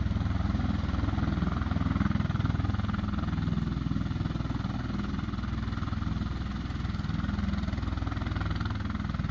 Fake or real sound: real